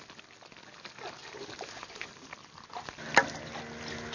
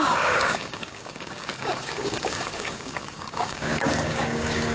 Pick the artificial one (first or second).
second